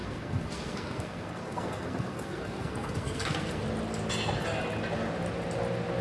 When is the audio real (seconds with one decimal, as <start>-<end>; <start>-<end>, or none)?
3.6-6.0